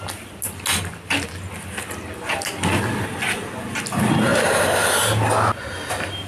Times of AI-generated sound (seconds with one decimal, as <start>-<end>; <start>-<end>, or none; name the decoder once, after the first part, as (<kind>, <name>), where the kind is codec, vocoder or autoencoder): 4.3-5.0 (vocoder, BigVGAN v2)